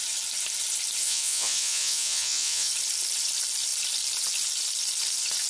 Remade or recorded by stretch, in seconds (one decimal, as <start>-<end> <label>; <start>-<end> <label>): 0.0-1.0 recorded; 1.0-2.7 remade; 2.7-5.5 recorded

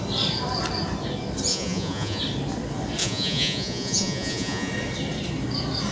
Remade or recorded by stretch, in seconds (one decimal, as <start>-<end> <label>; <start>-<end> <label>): 0.0-1.5 recorded; 1.5-2.2 remade; 2.2-3.0 recorded; 3.0-4.7 remade; 4.7-5.9 recorded

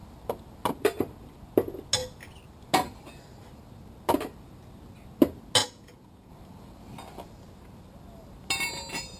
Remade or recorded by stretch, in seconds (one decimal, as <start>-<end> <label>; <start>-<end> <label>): 0.0-5.6 recorded; 5.6-6.3 remade; 6.3-9.2 recorded

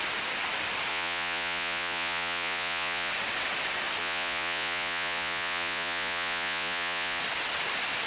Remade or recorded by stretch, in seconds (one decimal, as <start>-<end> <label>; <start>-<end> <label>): 0.0-0.9 recorded; 0.9-3.1 remade; 3.1-4.0 recorded; 4.0-7.2 remade; 7.2-8.1 recorded

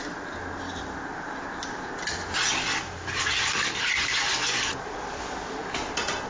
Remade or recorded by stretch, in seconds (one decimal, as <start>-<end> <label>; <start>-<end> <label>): 0.0-6.3 recorded

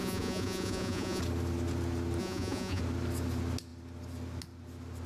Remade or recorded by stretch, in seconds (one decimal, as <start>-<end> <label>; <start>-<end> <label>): 0.0-1.2 remade; 1.2-2.2 recorded; 2.2-2.8 remade; 2.8-5.1 recorded

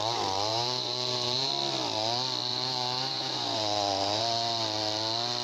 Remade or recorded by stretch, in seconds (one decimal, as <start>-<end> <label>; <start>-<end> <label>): 0.0-0.5 recorded; 0.5-1.5 remade; 1.5-2.5 recorded; 2.5-4.2 remade; 4.2-5.4 recorded

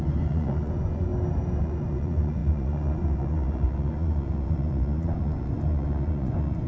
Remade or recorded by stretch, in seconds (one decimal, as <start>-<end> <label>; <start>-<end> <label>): 0.0-1.1 remade; 1.1-1.6 recorded; 1.6-6.7 remade